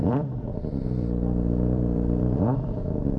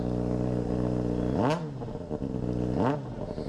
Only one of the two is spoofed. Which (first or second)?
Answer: first